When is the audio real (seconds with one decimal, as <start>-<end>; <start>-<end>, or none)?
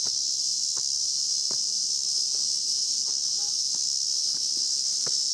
0.0-5.3